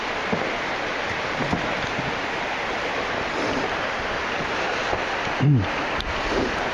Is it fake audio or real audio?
real